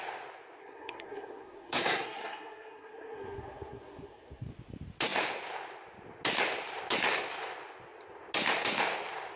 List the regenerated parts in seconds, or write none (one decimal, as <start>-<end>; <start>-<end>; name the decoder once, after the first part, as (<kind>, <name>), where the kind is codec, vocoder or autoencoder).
0.6-4.5 (codec, SNAC)